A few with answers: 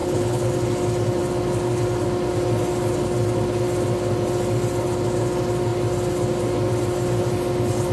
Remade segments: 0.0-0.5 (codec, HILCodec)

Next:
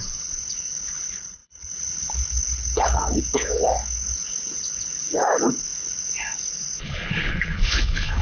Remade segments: 0.0-8.2 (codec, HILCodec)

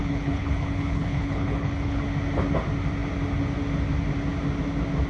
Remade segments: 0.0-2.0 (codec, HILCodec)

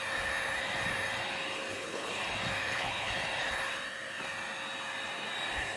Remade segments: 1.7-2.2 (codec, HILCodec); 2.6-3.1